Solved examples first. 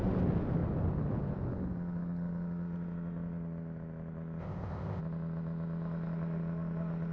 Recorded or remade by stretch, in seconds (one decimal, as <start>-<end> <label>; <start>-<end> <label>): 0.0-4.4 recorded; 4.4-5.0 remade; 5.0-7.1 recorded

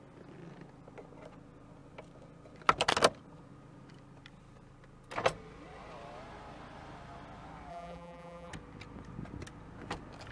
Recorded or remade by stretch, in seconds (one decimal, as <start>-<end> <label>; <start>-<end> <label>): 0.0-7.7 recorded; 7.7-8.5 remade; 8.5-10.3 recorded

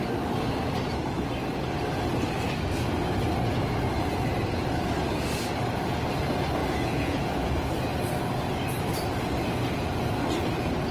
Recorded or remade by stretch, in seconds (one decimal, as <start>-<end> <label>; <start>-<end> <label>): 0.0-6.6 recorded; 6.6-7.2 remade; 7.2-10.9 recorded